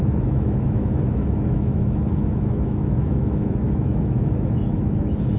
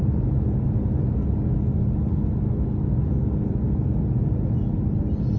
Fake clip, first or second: first